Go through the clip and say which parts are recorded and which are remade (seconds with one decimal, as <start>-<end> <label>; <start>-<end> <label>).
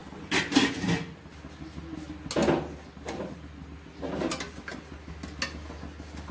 0.0-6.3 recorded